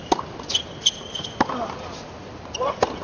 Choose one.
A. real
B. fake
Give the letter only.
A